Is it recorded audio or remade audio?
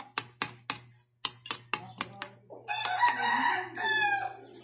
recorded